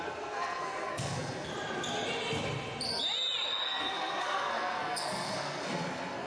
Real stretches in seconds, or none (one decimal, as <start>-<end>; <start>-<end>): 1.5-3.8